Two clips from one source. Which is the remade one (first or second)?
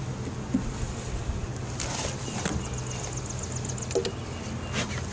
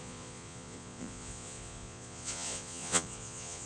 second